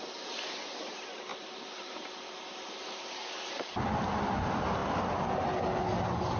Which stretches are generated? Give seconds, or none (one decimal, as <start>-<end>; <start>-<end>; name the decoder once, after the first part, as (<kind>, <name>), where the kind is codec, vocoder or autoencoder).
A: 1.3-4.0 (vocoder, BigVGAN v2)